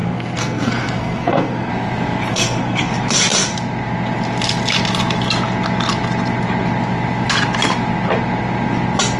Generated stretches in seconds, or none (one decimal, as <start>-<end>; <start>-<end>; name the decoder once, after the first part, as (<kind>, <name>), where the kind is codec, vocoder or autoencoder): 0.0-1.7 (codec, SNAC); 2.3-2.9